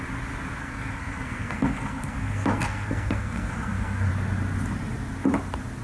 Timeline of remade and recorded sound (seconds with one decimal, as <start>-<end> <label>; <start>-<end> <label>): 0.0-0.6 recorded; 0.6-4.1 remade; 4.1-5.8 recorded